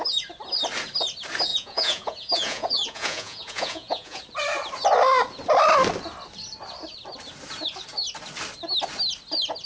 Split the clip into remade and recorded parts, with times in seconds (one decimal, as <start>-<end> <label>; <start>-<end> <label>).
0.0-1.5 recorded; 1.5-4.2 remade; 4.2-9.7 recorded